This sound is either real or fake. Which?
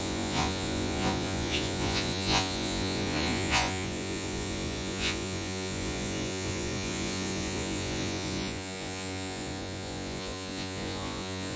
fake